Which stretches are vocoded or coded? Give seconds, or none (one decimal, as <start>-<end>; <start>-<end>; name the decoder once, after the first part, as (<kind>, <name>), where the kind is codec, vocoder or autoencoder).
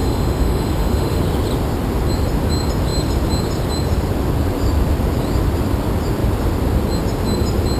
0.0-1.2 (autoencoder, DAC-VAE)